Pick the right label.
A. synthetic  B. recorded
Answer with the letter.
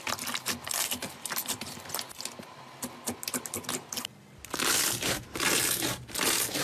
B